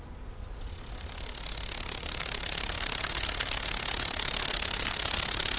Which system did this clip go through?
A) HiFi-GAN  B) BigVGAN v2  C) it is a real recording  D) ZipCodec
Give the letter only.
C